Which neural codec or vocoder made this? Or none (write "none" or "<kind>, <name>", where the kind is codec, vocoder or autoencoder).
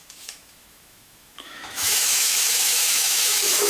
autoencoder, DAC-VAE